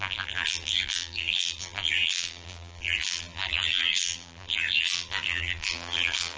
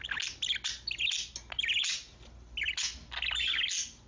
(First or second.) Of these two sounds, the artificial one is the first